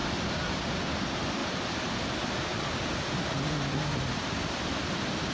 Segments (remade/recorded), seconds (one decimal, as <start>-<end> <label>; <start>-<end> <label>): 0.0-0.9 recorded; 0.9-1.4 remade; 1.4-4.6 recorded; 4.6-5.3 remade